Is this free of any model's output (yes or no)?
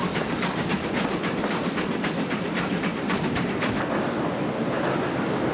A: yes